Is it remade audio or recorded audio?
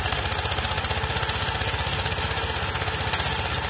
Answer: recorded